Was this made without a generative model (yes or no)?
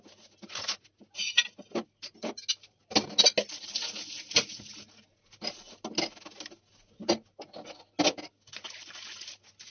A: yes